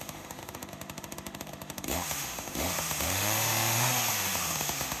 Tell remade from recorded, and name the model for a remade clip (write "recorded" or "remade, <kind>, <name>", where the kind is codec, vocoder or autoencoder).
remade, autoencoder, DAC-VAE